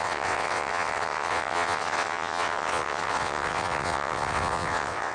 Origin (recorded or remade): remade